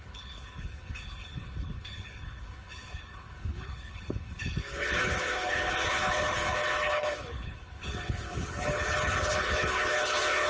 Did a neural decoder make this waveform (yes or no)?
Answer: yes